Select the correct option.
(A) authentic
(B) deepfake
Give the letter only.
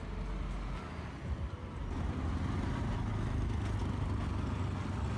A